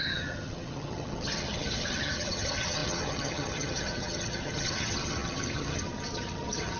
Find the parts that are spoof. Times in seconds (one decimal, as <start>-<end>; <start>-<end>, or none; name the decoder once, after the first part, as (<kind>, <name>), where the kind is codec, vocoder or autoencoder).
0.0-6.8 (vocoder, HiFi-GAN)